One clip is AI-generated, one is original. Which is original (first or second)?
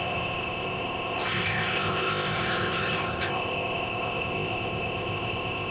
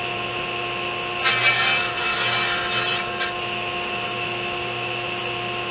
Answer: second